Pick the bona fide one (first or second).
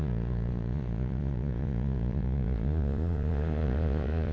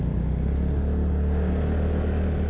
second